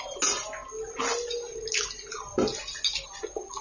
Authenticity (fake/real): real